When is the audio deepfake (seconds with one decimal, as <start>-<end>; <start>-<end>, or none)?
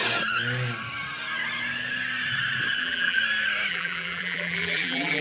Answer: 2.8-3.2; 3.7-5.2